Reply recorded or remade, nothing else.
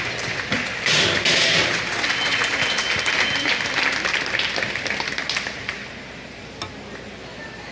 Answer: recorded